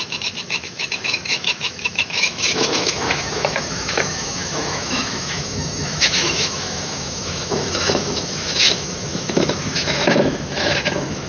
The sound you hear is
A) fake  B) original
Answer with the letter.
A